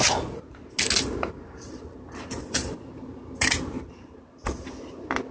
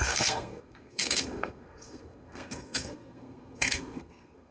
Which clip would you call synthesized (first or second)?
second